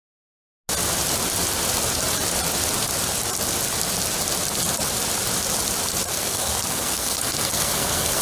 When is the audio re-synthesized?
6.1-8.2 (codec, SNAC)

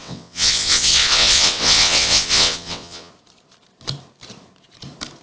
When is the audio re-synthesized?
0.0-3.1 (vocoder, WaveNeXt)